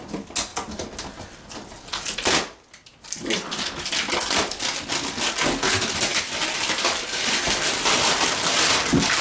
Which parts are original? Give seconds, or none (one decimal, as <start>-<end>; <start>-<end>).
0.0-9.2